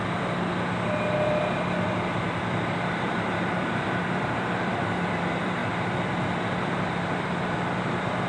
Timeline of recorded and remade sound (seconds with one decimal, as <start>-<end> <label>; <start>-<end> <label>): 0.0-1.8 recorded; 1.8-5.6 remade; 5.6-6.7 recorded; 6.7-8.3 remade